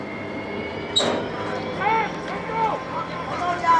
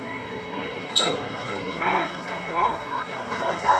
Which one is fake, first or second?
second